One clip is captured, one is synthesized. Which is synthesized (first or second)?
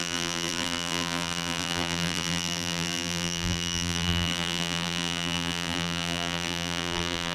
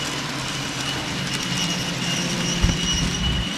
first